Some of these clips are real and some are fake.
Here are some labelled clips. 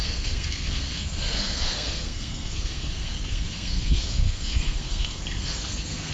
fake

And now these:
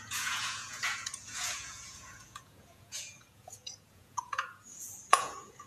fake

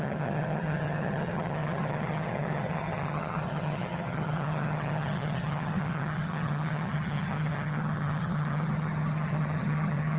fake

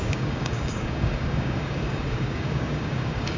fake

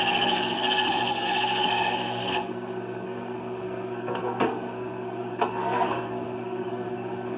fake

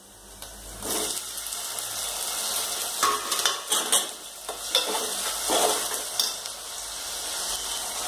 real